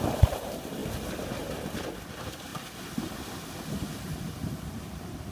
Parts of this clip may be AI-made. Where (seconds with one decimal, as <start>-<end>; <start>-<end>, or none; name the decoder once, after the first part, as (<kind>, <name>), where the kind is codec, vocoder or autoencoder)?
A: 0.0-0.8 (vocoder, BigVGAN v2); 2.1-2.5; 4.0-5.3

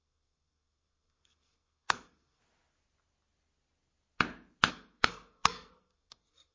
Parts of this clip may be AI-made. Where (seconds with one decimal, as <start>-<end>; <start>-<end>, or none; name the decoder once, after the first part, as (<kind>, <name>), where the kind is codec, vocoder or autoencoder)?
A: 0.0-2.4 (codec, SNAC); 4.7-6.5

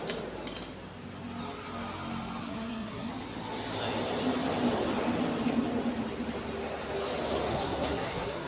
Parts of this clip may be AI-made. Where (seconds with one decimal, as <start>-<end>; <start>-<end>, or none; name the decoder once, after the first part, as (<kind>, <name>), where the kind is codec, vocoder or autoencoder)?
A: 2.4-3.1 (codec, SNAC); 7.5-8.5